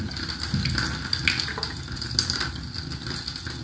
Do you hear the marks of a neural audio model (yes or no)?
no